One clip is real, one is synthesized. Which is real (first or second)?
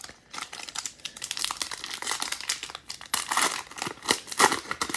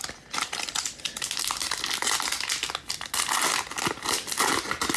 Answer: second